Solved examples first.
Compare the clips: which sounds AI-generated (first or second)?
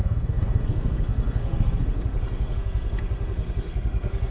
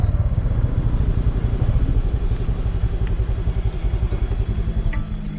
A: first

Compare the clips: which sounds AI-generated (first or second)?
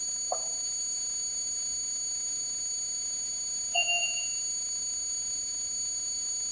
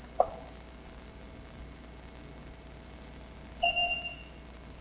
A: second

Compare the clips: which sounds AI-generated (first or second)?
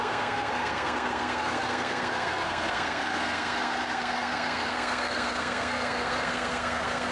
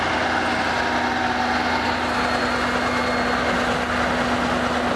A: first